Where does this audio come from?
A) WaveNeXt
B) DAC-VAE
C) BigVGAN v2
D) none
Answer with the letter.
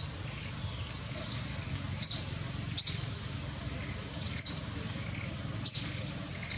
D